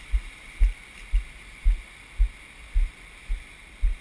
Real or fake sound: real